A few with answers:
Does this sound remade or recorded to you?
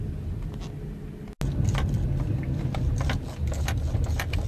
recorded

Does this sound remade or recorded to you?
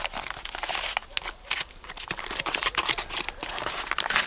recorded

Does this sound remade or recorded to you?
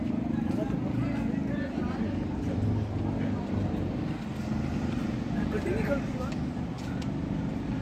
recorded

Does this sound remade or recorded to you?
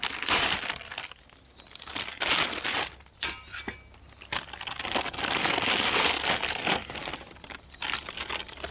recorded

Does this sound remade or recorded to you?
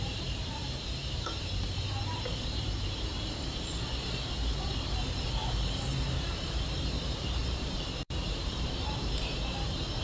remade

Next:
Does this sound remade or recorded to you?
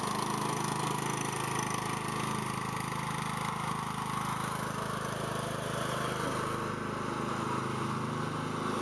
recorded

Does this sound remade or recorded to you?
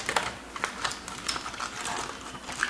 recorded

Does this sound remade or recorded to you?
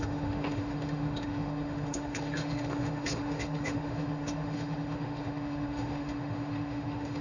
remade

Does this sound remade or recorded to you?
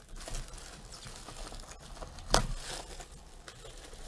recorded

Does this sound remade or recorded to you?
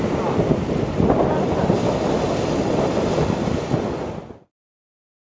recorded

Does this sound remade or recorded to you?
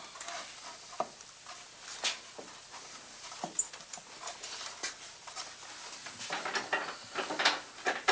recorded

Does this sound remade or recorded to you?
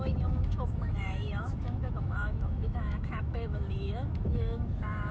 remade